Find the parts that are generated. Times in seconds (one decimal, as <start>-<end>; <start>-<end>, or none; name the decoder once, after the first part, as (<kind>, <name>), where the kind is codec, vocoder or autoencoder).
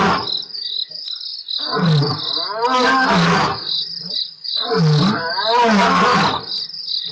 none